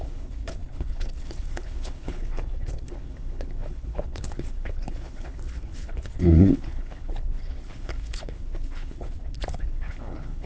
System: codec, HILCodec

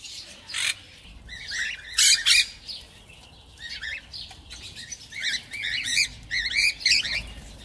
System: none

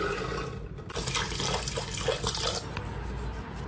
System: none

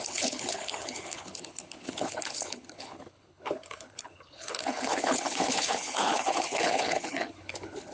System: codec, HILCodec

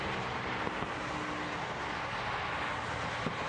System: none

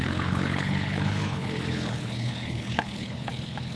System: codec, HILCodec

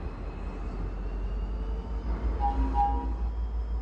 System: none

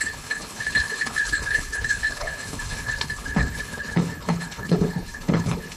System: codec, HILCodec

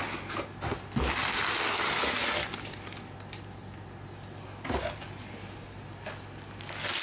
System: none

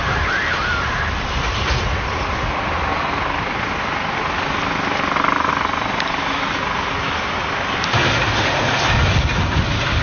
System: none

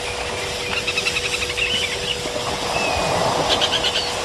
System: none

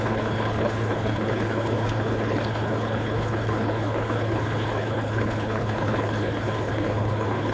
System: codec, HILCodec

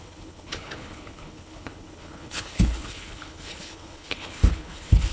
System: codec, HILCodec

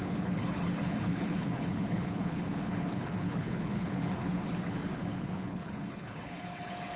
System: codec, HILCodec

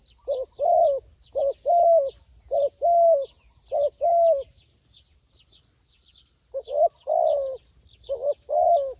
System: none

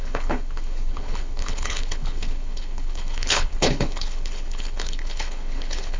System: codec, HILCodec